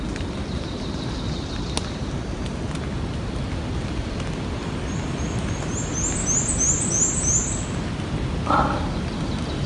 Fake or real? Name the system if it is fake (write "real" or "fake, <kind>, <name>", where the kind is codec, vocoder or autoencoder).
real